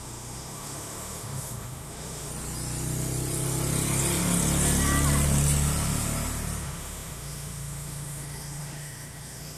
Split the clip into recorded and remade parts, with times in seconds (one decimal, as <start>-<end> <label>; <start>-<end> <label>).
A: 0.0-2.3 remade; 2.3-6.6 recorded; 6.6-9.6 remade